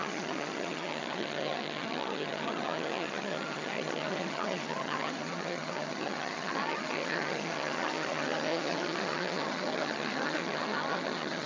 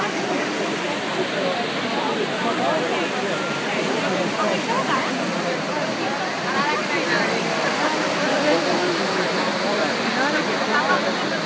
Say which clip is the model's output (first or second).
first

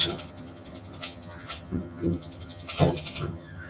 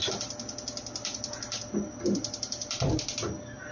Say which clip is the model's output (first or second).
first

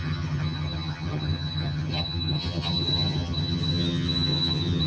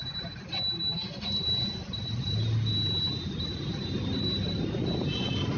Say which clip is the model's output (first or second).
first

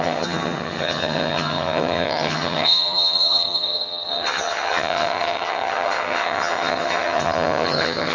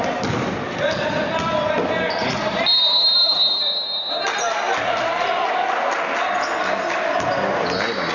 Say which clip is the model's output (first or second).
first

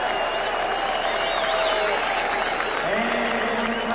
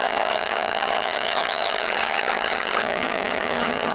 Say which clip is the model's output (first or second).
second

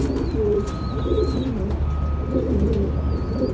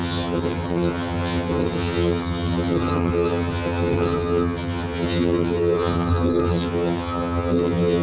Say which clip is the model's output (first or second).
second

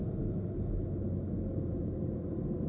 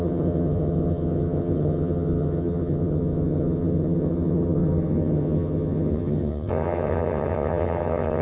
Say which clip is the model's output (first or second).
second